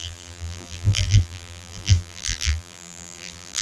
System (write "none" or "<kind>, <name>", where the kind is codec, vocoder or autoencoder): vocoder, BigVGAN v2